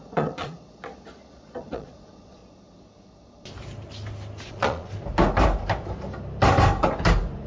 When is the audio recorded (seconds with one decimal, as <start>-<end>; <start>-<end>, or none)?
2.4-4.5; 4.9-7.5